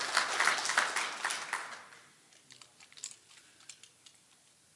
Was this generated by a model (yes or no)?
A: no